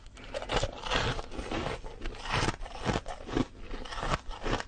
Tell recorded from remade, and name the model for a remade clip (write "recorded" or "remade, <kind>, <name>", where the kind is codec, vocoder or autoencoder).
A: recorded